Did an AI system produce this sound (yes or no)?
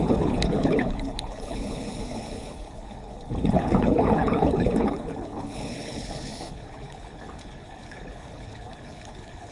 yes